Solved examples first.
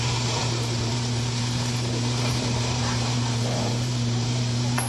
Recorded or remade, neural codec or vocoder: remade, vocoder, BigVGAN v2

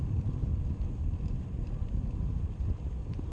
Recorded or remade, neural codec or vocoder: recorded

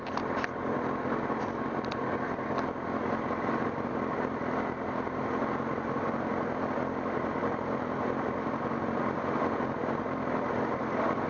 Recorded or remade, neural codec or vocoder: recorded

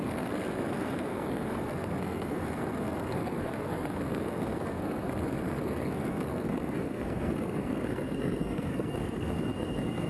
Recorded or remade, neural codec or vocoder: remade, codec, SNAC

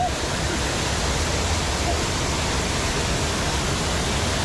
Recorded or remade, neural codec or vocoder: recorded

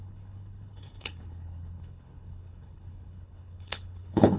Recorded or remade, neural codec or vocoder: remade, codec, HILCodec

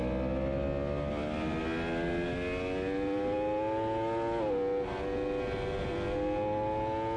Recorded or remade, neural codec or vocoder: recorded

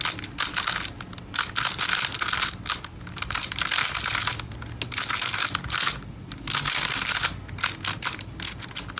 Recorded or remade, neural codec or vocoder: recorded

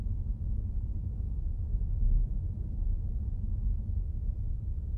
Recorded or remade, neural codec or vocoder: remade, vocoder, BigVGAN v2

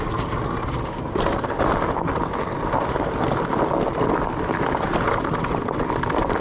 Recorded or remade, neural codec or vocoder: recorded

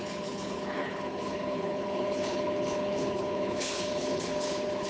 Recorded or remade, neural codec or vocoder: remade, codec, HILCodec